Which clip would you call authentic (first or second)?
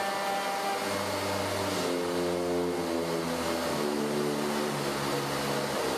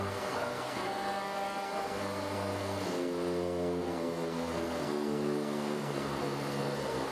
first